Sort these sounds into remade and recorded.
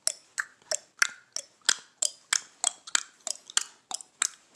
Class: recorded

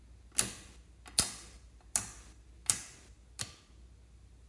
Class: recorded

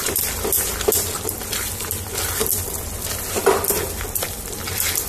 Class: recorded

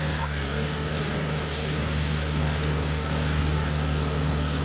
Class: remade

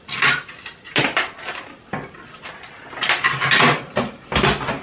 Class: recorded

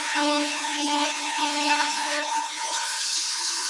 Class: remade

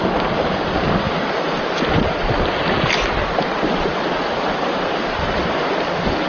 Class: recorded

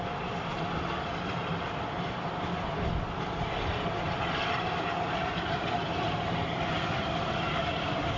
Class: recorded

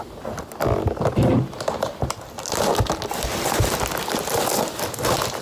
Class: recorded